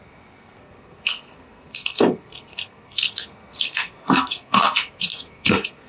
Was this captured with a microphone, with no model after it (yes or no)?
no